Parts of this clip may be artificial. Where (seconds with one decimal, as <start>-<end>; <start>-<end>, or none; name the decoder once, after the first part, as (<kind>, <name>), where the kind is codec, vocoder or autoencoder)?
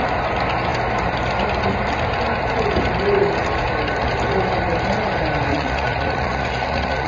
5.5-7.1 (vocoder, Vocos)